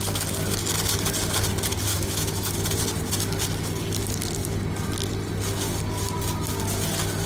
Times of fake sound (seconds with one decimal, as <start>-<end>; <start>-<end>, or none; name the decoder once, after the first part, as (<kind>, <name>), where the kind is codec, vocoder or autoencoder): 1.9-2.5 (autoencoder, DAC-VAE)